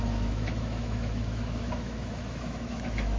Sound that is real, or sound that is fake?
fake